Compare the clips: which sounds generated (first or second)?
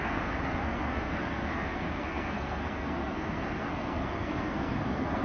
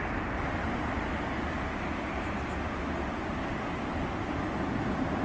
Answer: first